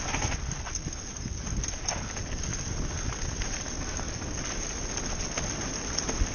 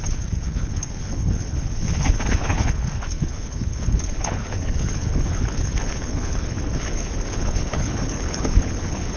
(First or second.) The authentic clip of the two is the first